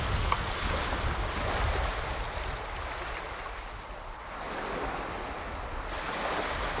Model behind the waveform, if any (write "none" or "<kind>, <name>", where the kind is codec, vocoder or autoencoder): none